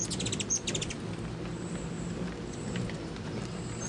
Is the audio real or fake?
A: real